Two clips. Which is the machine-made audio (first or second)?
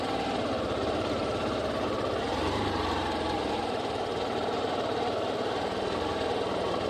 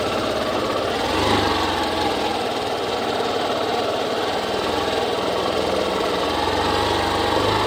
first